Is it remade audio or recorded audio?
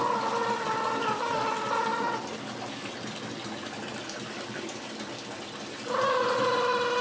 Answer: recorded